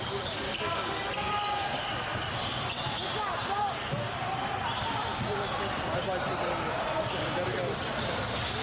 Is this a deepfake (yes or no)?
no